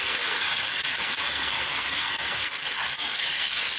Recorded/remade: remade